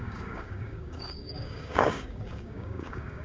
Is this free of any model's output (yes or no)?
no